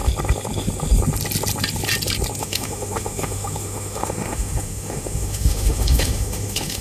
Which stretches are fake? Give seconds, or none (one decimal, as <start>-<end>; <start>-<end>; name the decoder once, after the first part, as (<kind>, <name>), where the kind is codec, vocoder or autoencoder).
2.4-6.8 (autoencoder, DAC-VAE)